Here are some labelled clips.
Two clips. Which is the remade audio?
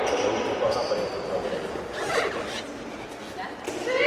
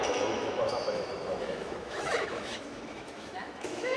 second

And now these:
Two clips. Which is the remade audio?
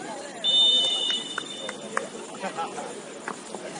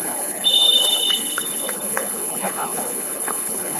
second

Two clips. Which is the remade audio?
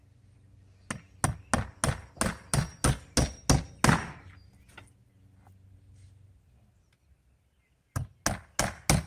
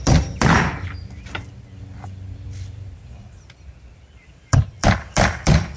second